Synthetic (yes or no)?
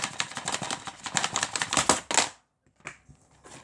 no